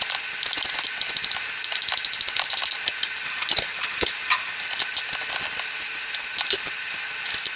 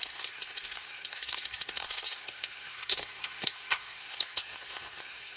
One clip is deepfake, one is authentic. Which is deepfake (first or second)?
second